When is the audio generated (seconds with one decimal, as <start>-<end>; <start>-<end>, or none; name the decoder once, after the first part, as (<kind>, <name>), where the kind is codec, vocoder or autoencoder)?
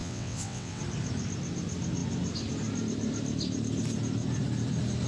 0.0-0.8 (vocoder, WaveNeXt)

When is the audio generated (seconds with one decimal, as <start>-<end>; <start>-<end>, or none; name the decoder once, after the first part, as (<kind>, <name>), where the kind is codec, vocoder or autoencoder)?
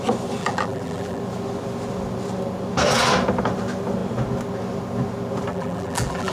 0.4-1.2 (vocoder, BigVGAN v2); 5.5-6.3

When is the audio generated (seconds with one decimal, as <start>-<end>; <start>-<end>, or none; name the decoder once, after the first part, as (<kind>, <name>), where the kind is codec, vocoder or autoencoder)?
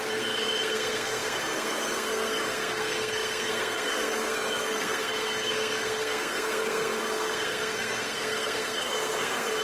0.0-9.6 (codec, SNAC)